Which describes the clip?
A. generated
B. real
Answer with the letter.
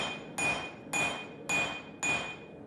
B